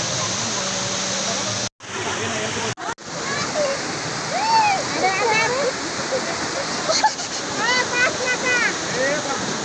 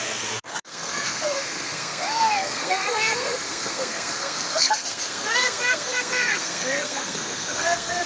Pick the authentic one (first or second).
first